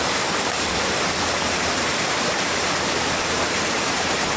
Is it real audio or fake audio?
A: fake